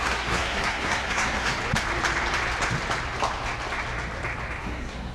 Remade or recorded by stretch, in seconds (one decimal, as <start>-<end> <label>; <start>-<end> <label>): 0.0-1.5 remade; 1.5-4.6 recorded; 4.6-5.1 remade